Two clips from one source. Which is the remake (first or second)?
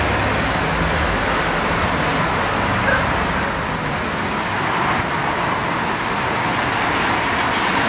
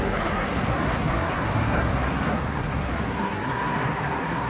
second